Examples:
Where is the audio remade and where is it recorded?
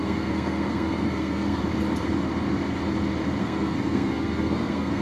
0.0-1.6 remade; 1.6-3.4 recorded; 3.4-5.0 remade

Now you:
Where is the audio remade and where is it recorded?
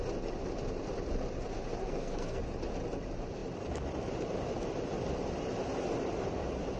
0.0-1.8 recorded; 1.8-2.4 remade; 2.4-6.8 recorded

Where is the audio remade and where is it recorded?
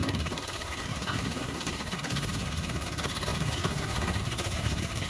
0.0-5.1 remade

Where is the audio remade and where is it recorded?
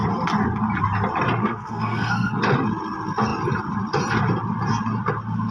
0.0-1.4 recorded; 1.4-2.3 remade; 2.3-5.5 recorded